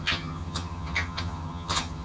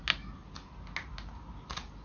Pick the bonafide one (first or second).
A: second